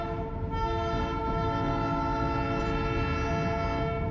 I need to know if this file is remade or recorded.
recorded